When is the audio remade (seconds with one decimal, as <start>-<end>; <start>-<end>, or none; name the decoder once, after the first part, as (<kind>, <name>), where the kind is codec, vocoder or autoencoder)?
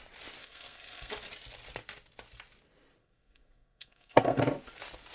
0.4-1.1 (codec, SNAC); 3.0-4.4